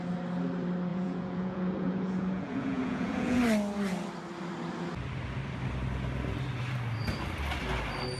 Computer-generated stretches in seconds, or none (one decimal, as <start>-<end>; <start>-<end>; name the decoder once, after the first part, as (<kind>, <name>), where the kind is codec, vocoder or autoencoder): 0.9-3.4 (vocoder, Vocos)